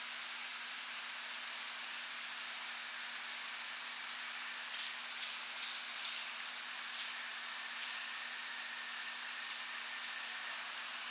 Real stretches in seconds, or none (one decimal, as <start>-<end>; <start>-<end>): 0.0-11.1

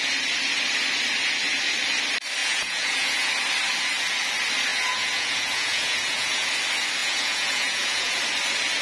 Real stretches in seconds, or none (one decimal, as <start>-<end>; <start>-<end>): 0.0-2.4; 3.3-4.7; 6.5-7.0; 8.2-8.8